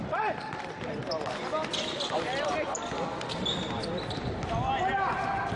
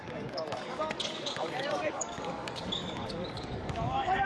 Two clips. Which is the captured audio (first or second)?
first